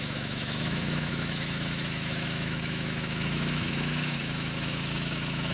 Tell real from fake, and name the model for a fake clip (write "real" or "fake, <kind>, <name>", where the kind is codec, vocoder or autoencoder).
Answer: fake, autoencoder, DAC-VAE